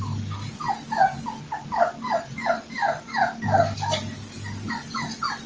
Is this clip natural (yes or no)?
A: yes